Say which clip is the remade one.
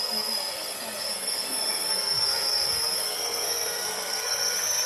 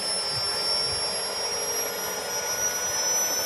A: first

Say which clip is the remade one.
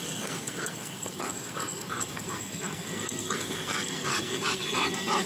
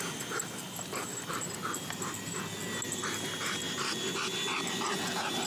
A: first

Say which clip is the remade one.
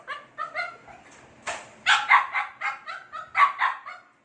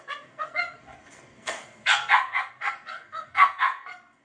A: second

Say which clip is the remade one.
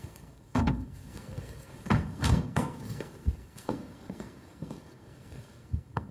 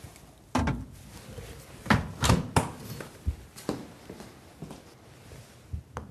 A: first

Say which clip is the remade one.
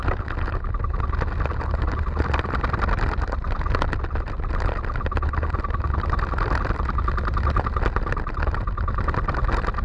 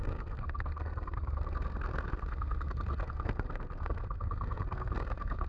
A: second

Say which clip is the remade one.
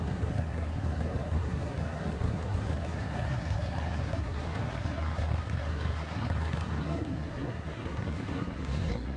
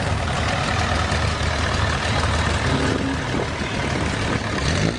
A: first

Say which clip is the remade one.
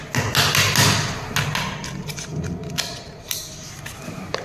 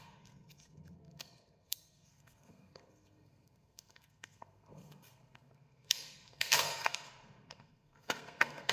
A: second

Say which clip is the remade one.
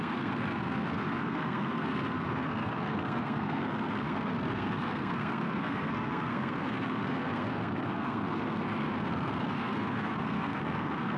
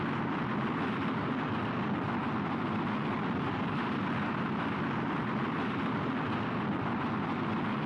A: first